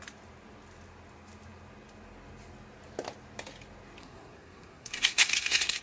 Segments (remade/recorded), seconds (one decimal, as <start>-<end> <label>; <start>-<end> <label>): 0.0-4.0 recorded; 4.0-5.8 remade